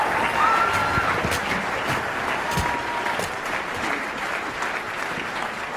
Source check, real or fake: real